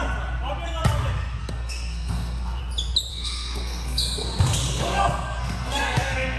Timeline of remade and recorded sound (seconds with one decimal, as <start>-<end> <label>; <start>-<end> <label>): 0.0-1.4 recorded; 1.4-2.6 remade; 2.6-3.1 recorded; 3.1-6.4 remade